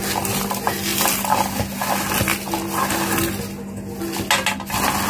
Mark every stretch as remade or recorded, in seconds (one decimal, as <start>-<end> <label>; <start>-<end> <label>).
0.0-5.1 recorded

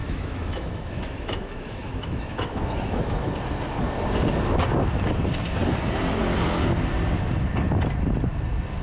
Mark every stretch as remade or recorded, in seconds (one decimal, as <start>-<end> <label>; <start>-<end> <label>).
0.0-3.3 remade; 3.3-8.8 recorded

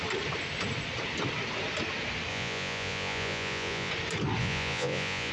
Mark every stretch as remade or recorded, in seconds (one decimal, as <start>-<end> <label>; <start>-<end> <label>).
0.0-2.3 recorded; 2.3-3.9 remade; 3.9-4.4 recorded; 4.4-5.3 remade